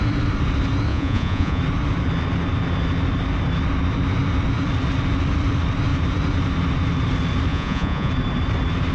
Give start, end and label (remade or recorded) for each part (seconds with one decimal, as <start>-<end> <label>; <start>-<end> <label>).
0.0-0.9 recorded; 0.9-1.6 remade; 1.6-7.5 recorded; 7.5-8.1 remade; 8.1-8.9 recorded